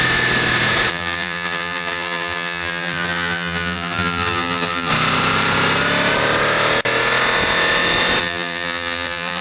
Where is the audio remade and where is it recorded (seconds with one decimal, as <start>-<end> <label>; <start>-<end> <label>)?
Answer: 0.0-0.9 recorded; 0.9-4.9 remade; 4.9-8.2 recorded; 8.2-9.4 remade